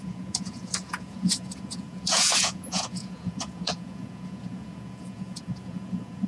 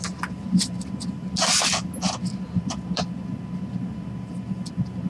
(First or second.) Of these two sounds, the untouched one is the second